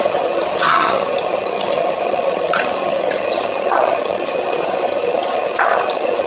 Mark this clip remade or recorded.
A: remade